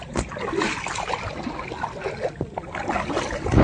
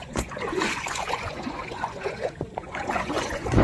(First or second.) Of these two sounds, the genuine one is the first